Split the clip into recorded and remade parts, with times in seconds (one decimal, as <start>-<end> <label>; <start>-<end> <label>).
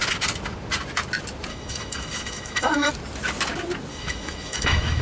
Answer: 0.0-1.5 recorded; 1.5-2.9 remade; 2.9-3.9 recorded; 3.9-5.0 remade